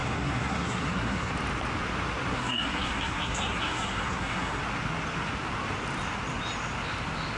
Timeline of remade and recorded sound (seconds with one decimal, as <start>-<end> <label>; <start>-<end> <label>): 0.0-1.3 remade; 1.3-2.3 recorded; 2.3-4.6 remade; 4.6-7.4 recorded

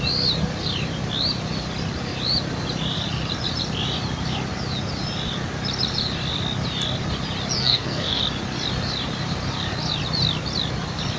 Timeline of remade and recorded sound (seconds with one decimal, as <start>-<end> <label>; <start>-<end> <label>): 0.0-7.6 recorded; 7.6-8.2 remade; 8.2-11.2 recorded

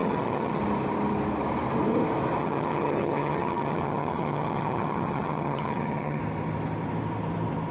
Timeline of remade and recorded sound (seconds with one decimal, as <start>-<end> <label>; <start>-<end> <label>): 0.0-0.6 remade; 0.6-2.4 recorded; 2.4-6.2 remade; 6.2-7.7 recorded

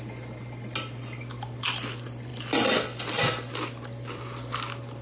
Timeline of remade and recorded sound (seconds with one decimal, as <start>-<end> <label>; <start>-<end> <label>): 0.0-5.0 recorded

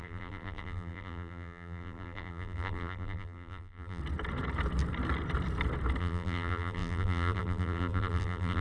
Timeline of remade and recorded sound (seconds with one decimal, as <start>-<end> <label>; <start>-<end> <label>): 0.0-4.0 remade; 4.0-6.0 recorded; 6.0-8.6 remade

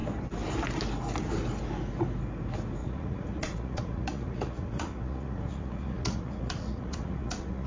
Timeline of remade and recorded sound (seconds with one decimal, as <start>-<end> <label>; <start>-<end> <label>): 0.0-2.8 recorded; 2.8-7.7 remade

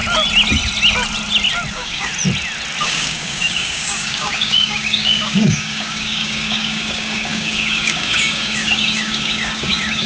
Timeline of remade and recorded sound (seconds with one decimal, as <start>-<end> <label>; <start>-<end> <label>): 0.0-1.7 recorded; 1.7-2.1 remade; 2.1-2.8 recorded; 2.8-10.1 remade

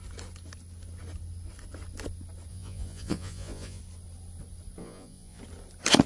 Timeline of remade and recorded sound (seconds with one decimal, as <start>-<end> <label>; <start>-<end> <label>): 0.0-2.5 recorded; 2.5-3.8 remade; 3.8-4.8 recorded; 4.8-5.4 remade; 5.4-6.1 recorded